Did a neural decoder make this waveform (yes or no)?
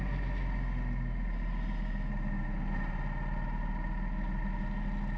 no